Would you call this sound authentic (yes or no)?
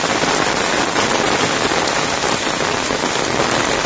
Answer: yes